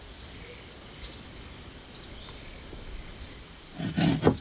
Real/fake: real